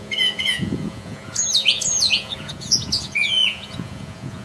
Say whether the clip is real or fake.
fake